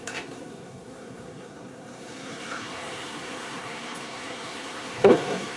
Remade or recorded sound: remade